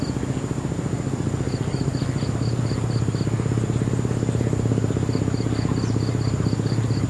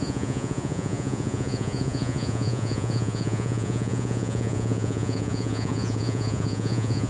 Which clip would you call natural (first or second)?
first